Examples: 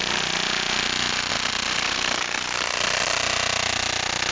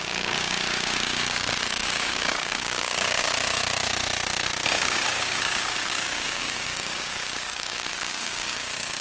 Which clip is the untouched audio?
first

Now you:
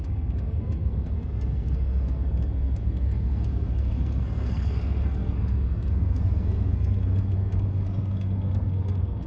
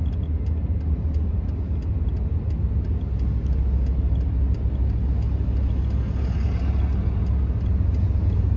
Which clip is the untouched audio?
second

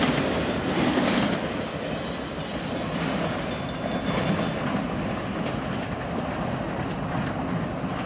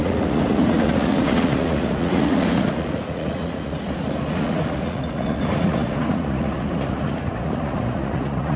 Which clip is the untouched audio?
first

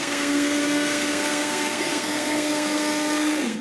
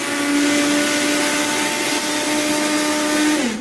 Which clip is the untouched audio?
second